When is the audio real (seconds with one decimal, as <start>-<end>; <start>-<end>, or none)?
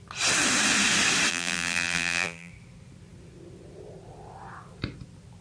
0.0-1.3; 2.5-5.4